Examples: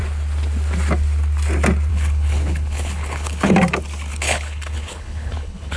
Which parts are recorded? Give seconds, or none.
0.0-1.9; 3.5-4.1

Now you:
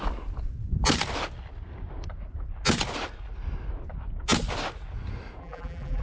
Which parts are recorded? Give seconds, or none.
0.0-5.4

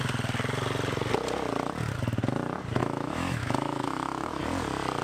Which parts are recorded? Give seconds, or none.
0.0-2.8; 4.4-5.0

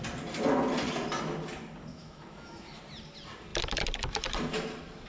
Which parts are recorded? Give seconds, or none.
0.0-1.9; 2.8-5.1

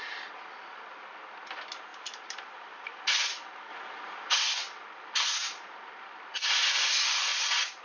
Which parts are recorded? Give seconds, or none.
0.0-1.9; 3.0-3.7; 4.3-7.8

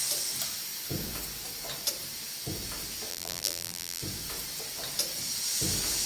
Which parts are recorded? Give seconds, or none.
0.0-3.1; 4.0-6.1

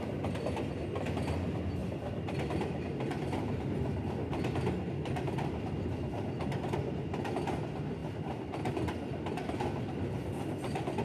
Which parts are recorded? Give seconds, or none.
0.0-11.0

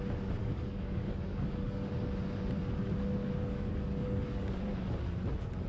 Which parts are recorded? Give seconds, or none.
0.0-0.4; 1.9-3.2; 4.6-5.7